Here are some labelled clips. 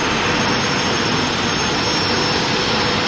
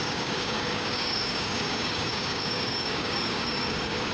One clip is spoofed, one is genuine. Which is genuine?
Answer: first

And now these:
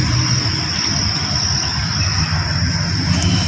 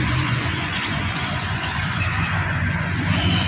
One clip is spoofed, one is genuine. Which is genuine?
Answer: first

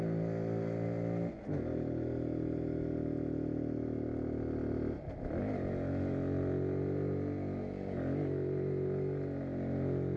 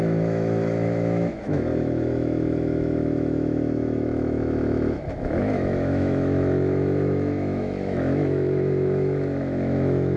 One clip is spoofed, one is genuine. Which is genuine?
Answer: first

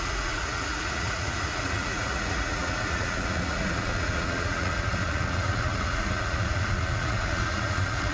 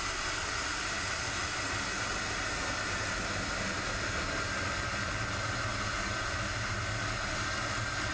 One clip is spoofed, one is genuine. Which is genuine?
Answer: second